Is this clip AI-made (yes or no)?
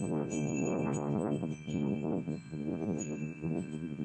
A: yes